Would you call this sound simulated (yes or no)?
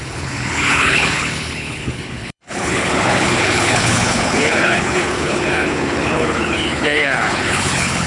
yes